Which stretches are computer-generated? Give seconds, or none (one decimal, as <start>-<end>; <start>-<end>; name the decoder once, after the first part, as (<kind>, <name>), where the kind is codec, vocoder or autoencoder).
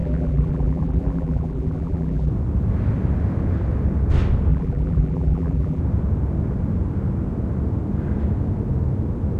0.0-2.3 (vocoder, BigVGAN v2); 4.5-5.8